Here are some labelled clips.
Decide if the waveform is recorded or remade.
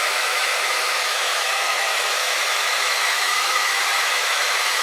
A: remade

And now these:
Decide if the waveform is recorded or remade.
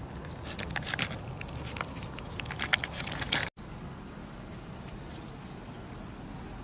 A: recorded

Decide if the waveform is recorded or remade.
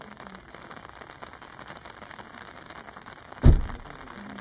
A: recorded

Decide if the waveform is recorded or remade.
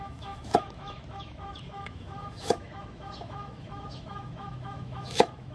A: remade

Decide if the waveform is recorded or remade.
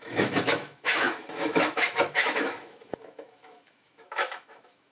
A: remade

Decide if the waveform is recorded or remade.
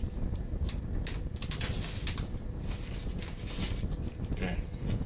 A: recorded